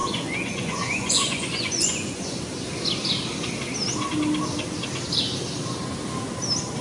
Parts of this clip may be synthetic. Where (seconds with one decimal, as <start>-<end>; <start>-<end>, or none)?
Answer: 0.0-2.4